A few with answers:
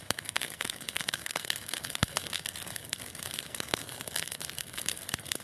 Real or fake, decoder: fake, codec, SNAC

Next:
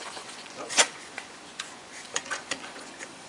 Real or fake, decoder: fake, vocoder, Vocos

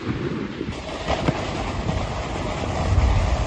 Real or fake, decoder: real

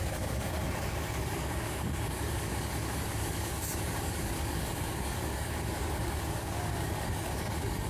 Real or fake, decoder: fake, codec, DAC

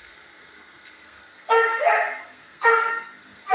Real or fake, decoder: fake, codec, SNAC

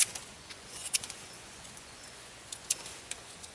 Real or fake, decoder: fake, vocoder, Vocos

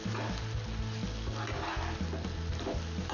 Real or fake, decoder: real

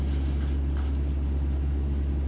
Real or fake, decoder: real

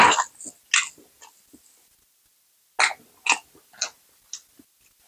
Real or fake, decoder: real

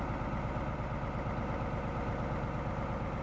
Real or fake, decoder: real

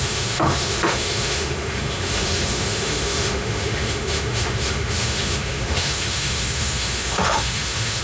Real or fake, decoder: fake, autoencoder, DAC-VAE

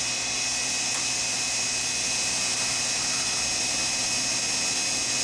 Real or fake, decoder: real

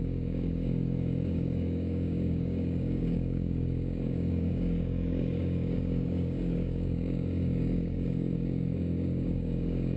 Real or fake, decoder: fake, codec, DAC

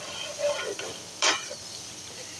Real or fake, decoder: real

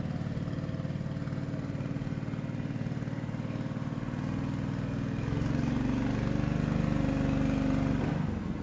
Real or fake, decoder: real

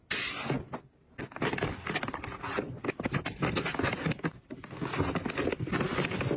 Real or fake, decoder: real